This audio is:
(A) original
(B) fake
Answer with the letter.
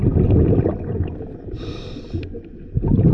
A